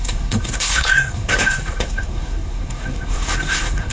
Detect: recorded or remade remade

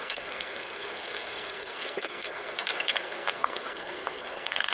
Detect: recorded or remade remade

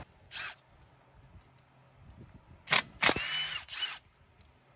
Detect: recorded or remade recorded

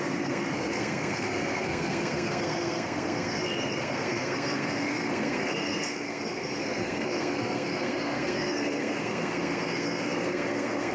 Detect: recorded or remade remade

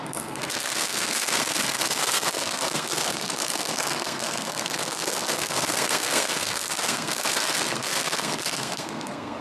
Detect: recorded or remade remade